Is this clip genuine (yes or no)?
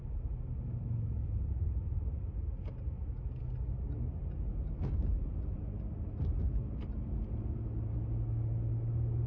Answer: yes